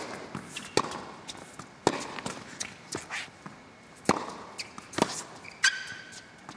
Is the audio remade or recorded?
recorded